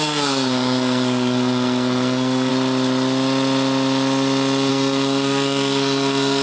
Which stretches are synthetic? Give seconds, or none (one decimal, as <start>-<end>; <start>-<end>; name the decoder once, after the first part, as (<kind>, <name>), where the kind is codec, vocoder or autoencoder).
0.0-2.5 (codec, SNAC); 4.7-6.4